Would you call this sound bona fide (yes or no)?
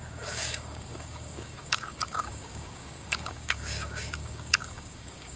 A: no